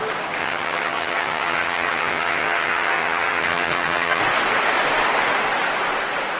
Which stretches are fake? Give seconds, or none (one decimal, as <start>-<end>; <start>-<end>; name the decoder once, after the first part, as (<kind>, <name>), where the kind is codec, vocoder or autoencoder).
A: 0.4-4.2 (vocoder, HiFi-GAN)